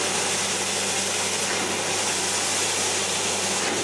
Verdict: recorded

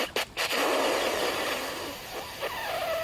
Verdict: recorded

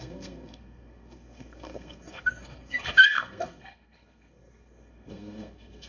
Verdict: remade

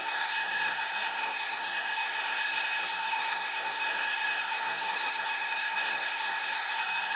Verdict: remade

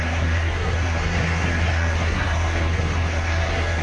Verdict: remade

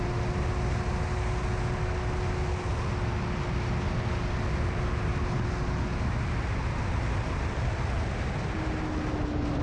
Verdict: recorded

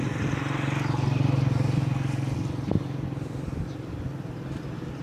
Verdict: recorded